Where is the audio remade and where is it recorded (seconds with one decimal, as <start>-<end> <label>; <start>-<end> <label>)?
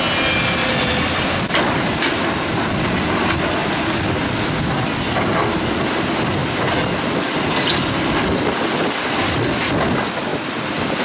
0.0-11.0 recorded